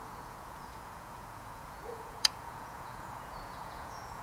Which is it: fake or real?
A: fake